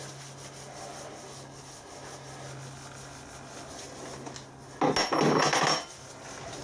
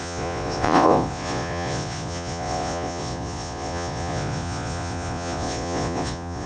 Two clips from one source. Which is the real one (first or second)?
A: first